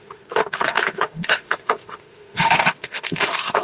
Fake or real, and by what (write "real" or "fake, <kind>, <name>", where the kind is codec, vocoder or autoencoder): fake, autoencoder, DAC-VAE